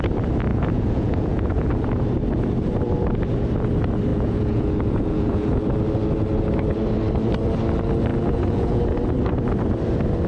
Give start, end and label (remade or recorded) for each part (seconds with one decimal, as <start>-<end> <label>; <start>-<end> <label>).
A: 0.0-0.5 recorded; 0.5-1.7 remade; 1.7-4.1 recorded; 4.1-5.6 remade; 5.6-8.1 recorded; 8.1-8.8 remade; 8.8-10.3 recorded